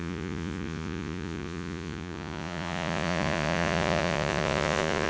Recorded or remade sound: remade